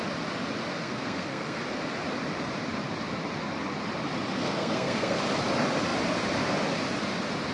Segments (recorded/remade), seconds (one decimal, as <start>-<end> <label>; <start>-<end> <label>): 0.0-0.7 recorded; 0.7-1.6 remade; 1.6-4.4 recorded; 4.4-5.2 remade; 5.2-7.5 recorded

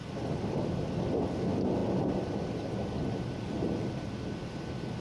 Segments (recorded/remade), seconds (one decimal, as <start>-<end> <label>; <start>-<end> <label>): 0.0-5.0 recorded

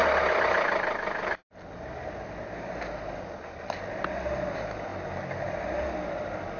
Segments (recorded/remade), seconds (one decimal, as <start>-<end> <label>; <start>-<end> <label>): 0.0-6.6 recorded